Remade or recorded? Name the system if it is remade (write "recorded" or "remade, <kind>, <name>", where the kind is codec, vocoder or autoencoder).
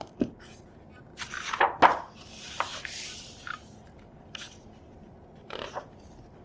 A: recorded